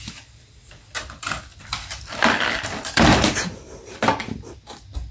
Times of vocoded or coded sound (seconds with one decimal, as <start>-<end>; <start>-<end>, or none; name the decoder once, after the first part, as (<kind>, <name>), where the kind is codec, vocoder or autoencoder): 1.5-4.0 (vocoder, BigVGAN v2)